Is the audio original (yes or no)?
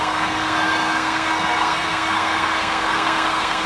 no